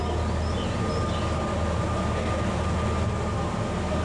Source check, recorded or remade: recorded